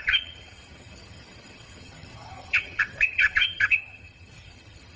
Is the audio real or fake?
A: fake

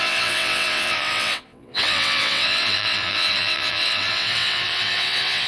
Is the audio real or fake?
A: fake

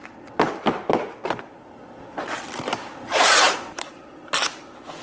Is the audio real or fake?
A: real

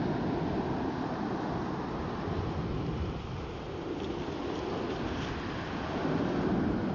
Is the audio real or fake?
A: real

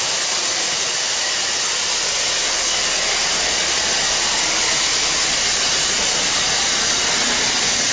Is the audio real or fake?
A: real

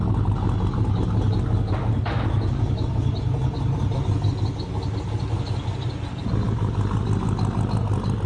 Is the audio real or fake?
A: real